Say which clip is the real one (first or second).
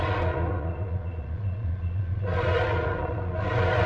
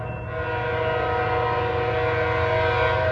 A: second